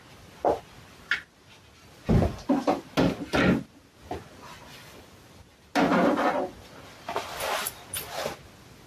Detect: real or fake real